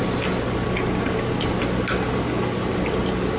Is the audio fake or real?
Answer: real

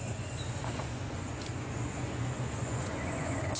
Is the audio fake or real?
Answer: fake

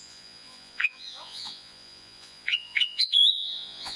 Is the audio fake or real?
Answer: fake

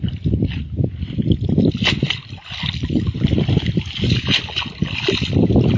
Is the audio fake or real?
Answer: real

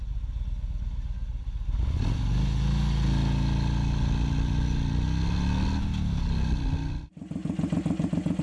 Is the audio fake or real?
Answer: real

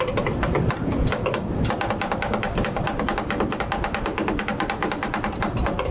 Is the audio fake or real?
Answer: real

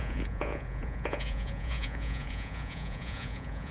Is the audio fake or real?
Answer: fake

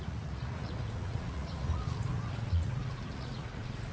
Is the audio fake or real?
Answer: fake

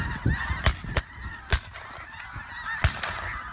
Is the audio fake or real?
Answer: real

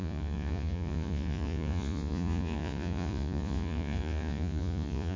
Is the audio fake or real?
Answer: fake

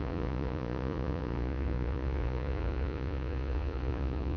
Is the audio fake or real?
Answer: fake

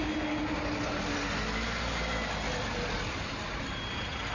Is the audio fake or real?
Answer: real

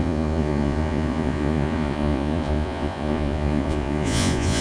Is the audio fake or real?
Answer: fake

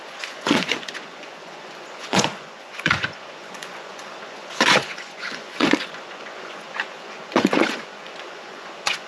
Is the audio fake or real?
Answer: fake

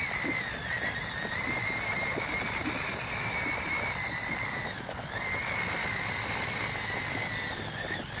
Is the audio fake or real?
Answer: real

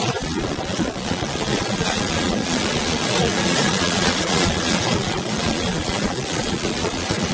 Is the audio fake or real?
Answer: fake